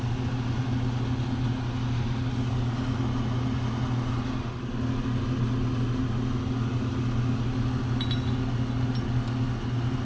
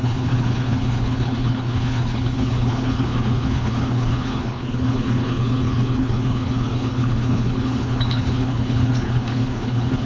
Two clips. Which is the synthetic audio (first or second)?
second